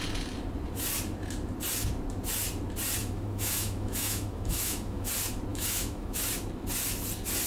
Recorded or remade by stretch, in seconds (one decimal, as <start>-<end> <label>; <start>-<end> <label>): 0.0-3.0 recorded; 3.0-5.1 remade; 5.1-5.5 recorded; 5.5-6.2 remade; 6.2-7.5 recorded